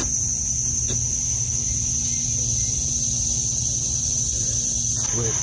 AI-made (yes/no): no